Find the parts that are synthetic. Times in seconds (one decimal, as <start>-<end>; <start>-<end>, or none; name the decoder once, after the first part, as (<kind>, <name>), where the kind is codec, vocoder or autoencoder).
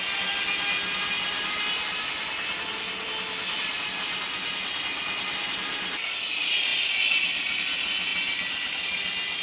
none